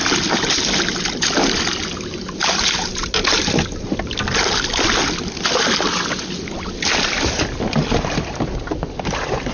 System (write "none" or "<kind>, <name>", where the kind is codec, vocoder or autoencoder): none